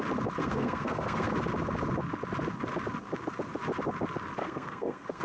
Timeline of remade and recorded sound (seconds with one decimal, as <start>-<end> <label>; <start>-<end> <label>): 0.0-0.4 recorded; 0.4-1.3 remade; 1.3-4.4 recorded; 4.4-5.2 remade